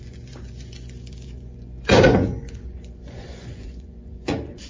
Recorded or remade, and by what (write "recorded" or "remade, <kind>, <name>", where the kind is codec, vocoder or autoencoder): remade, vocoder, Vocos